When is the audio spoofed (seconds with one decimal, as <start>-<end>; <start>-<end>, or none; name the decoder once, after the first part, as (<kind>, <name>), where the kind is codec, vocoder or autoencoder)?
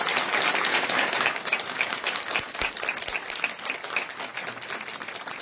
0.7-2.7 (codec, DAC)